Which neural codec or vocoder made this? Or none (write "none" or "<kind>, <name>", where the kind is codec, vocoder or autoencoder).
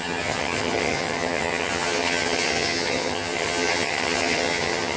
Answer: vocoder, HiFi-GAN